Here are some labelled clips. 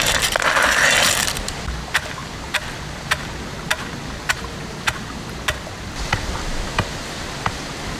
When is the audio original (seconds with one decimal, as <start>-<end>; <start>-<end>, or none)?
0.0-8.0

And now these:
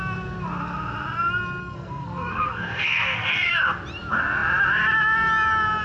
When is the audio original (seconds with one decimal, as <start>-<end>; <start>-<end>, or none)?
0.0-1.6; 3.5-5.8

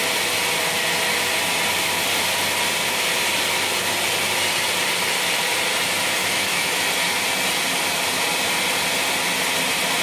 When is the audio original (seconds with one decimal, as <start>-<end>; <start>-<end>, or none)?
0.0-6.2; 6.8-10.0

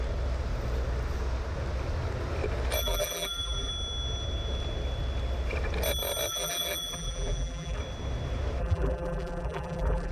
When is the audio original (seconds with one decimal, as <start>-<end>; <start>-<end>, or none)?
0.0-2.8; 3.7-6.3; 7.8-8.6

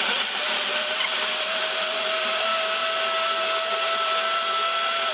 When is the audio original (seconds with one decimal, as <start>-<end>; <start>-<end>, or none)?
2.5-3.7